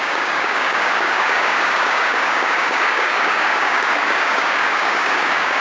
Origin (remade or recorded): remade